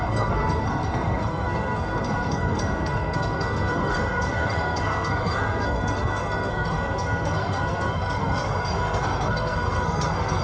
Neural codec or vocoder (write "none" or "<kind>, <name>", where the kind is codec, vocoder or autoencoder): codec, SNAC